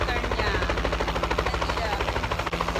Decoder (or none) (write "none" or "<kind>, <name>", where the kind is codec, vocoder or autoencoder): none